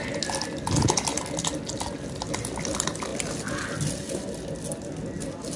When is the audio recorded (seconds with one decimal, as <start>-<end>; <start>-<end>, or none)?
0.0-5.6